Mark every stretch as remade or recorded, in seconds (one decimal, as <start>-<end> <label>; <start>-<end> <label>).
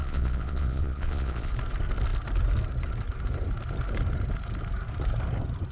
0.0-1.5 remade; 1.5-5.7 recorded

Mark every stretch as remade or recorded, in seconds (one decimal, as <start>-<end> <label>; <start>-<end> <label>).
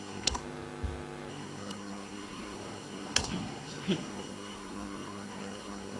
0.0-0.4 remade; 0.4-1.3 recorded; 1.3-6.0 remade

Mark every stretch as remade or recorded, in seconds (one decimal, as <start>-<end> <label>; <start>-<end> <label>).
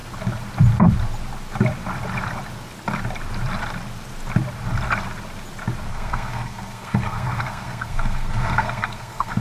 0.0-5.9 recorded; 5.9-9.4 remade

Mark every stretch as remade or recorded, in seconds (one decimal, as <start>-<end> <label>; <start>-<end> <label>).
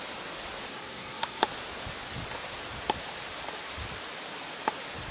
0.0-0.7 recorded; 0.7-1.4 remade; 1.4-5.1 recorded